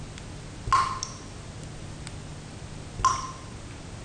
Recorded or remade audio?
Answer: recorded